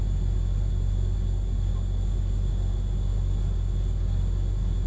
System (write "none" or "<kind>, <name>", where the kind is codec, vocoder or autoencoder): none